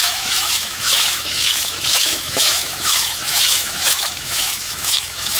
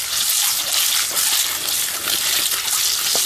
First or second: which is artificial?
first